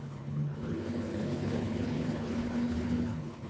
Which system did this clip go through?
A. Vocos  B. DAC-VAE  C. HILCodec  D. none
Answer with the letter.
C